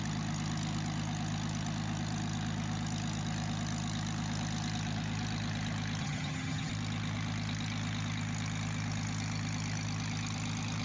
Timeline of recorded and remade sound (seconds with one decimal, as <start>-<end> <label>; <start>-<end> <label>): 0.0-6.0 recorded; 6.0-6.7 remade; 6.7-10.8 recorded